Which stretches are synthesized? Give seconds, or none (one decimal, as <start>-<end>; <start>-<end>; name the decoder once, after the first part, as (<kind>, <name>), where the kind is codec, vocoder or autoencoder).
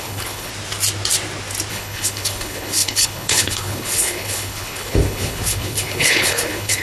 0.0-0.5 (codec, HILCodec); 1.7-6.8